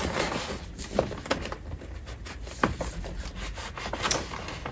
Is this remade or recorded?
recorded